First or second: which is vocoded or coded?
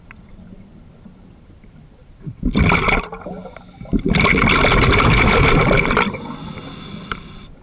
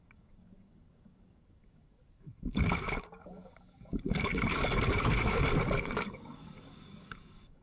second